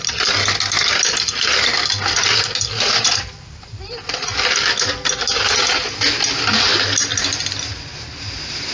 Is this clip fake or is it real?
real